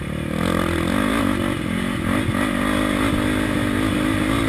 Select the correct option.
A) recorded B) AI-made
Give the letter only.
A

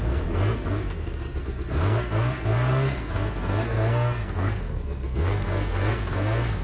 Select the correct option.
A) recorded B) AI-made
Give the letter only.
B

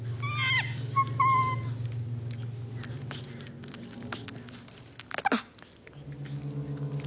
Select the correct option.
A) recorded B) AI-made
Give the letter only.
A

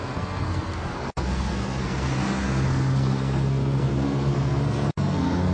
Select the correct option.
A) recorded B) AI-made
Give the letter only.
B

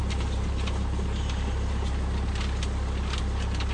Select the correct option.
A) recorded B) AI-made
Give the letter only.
A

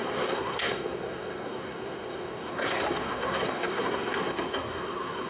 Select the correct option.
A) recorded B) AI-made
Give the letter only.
B